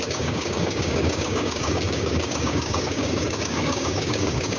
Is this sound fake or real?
fake